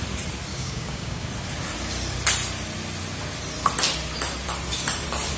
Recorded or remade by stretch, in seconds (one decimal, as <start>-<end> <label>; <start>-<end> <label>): 0.0-0.5 recorded; 0.5-1.3 remade; 1.3-5.4 recorded